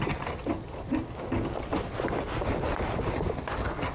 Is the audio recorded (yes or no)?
yes